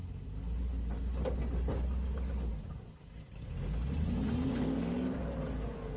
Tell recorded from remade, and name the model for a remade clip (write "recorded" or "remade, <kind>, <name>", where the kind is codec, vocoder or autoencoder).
recorded